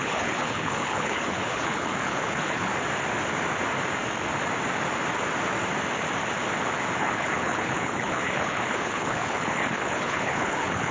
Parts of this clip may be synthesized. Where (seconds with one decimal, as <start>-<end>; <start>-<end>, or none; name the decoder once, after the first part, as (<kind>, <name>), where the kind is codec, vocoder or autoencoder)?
0.0-2.7 (codec, HILCodec); 7.0-10.9